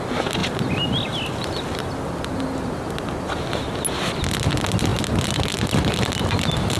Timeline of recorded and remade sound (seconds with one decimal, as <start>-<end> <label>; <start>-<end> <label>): 0.0-6.8 recorded